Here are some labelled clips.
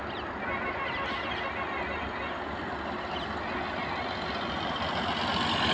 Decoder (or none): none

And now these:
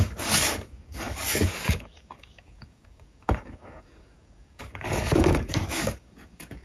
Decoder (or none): codec, DAC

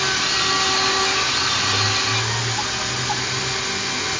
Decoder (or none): none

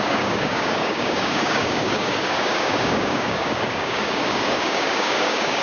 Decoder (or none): codec, DAC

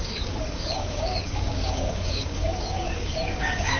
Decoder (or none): codec, DAC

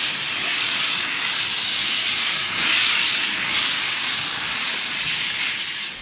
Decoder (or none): codec, DAC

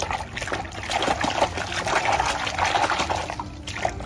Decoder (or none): none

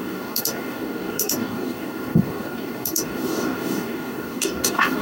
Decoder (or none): codec, DAC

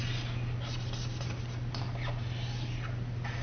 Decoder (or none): none